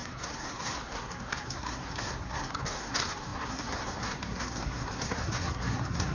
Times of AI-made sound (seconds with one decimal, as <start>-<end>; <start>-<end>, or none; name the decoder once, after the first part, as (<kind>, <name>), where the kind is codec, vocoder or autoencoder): 0.0-6.1 (codec, SNAC)